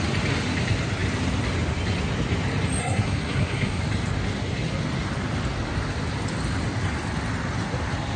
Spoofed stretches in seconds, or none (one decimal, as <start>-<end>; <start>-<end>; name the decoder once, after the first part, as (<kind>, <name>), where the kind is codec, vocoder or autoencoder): 2.8-3.8 (codec, SNAC)